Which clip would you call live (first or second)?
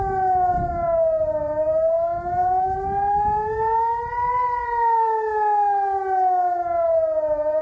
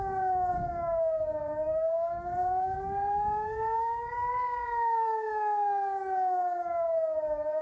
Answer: first